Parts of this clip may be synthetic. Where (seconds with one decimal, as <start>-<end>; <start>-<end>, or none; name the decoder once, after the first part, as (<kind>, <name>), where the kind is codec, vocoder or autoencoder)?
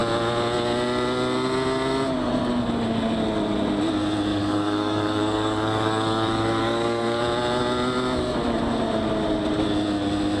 4.3-7.2 (codec, DAC)